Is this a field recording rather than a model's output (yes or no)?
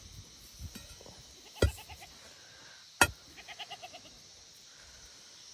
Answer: yes